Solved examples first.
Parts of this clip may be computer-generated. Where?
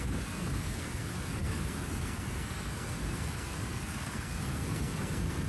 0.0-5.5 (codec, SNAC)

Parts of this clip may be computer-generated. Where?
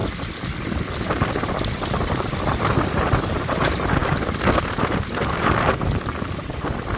none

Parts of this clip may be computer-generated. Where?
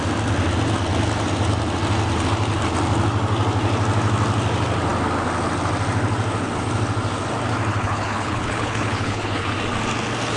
7.7-9.5 (codec, HILCodec)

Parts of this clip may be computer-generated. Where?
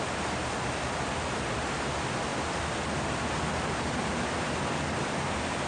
none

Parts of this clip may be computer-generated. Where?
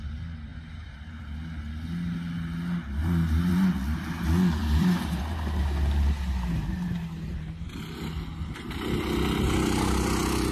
0.5-1.2 (vocoder, BigVGAN v2); 3.0-3.5; 4.6-5.2; 7.3-7.8